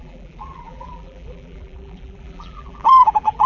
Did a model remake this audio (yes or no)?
yes